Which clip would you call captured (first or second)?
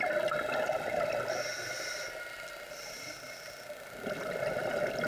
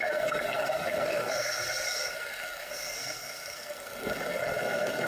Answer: first